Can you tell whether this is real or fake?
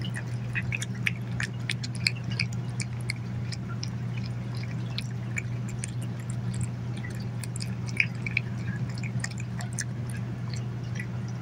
real